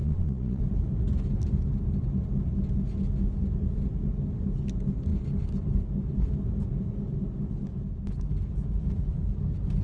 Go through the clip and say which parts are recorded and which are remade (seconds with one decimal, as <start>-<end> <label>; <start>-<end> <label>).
0.0-0.6 remade; 0.6-9.8 recorded